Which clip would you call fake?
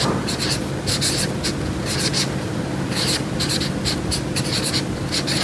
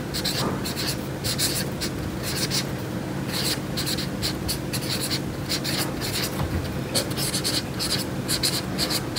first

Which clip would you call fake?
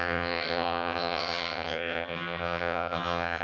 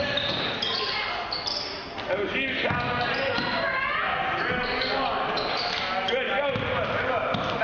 first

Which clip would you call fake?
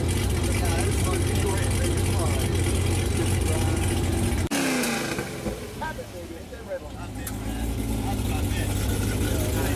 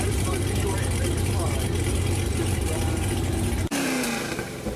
second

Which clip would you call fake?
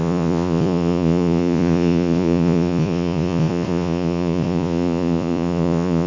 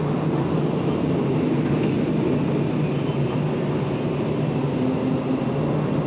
first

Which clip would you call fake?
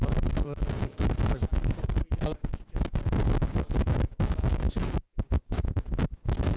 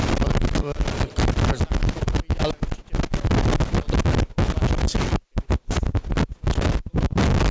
first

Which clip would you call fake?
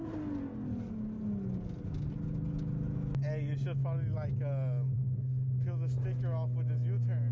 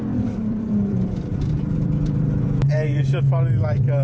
second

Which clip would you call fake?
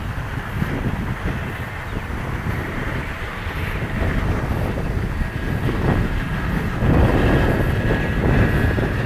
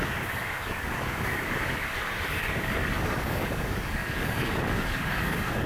second